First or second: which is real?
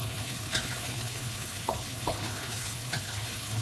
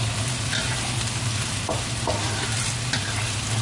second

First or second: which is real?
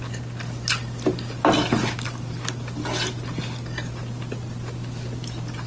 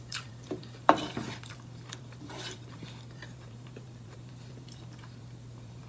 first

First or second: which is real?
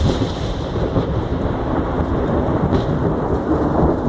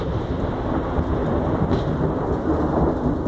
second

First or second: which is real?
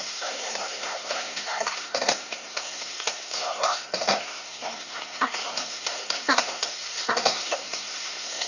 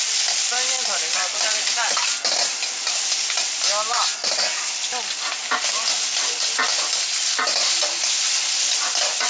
second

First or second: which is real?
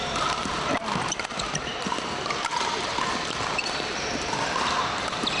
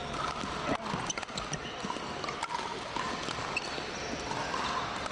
second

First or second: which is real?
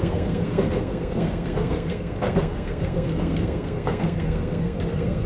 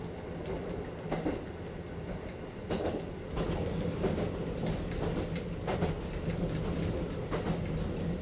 second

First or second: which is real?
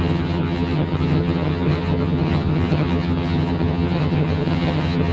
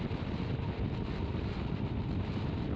second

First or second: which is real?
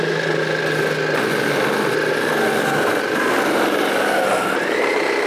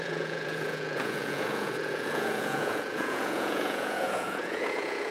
first